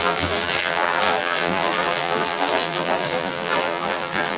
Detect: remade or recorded remade